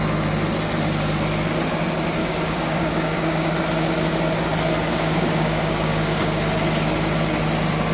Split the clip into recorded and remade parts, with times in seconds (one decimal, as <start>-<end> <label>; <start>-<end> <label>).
0.0-2.2 recorded; 2.2-3.5 remade; 3.5-4.9 recorded; 4.9-6.4 remade; 6.4-7.9 recorded

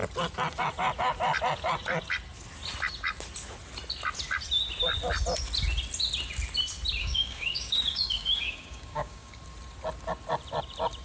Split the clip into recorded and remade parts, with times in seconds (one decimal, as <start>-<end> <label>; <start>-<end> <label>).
0.0-7.0 recorded; 7.0-9.4 remade; 9.4-11.0 recorded

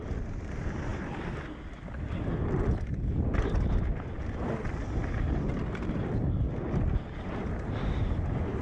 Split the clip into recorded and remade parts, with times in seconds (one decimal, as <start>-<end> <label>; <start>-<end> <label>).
0.0-8.6 recorded

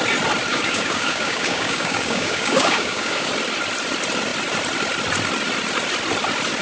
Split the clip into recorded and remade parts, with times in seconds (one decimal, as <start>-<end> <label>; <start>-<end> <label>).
0.0-0.5 recorded; 0.5-3.3 remade; 3.3-6.6 recorded

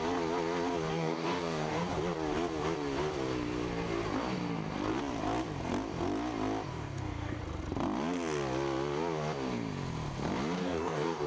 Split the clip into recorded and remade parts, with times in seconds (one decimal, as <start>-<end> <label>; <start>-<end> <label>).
0.0-0.9 recorded; 0.9-1.9 remade; 1.9-6.7 recorded; 6.7-7.4 remade; 7.4-10.6 recorded; 10.6-11.3 remade

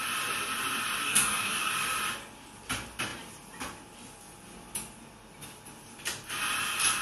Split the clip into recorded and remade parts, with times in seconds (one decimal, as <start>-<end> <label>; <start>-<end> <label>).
0.0-1.0 recorded; 1.0-1.7 remade; 1.7-7.0 recorded

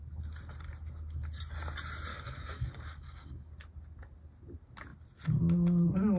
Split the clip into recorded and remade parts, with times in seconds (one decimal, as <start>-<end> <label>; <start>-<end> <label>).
0.0-2.1 recorded; 2.1-3.5 remade; 3.5-6.2 recorded

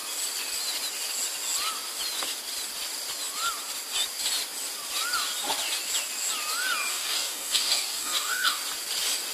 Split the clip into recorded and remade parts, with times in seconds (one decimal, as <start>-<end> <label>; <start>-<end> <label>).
0.0-6.9 recorded; 6.9-8.6 remade; 8.6-9.3 recorded